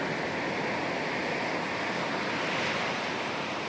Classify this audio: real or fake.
real